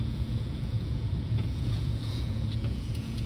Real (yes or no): no